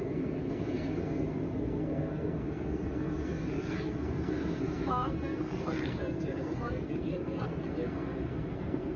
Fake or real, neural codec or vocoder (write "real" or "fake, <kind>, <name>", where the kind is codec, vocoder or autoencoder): fake, codec, SNAC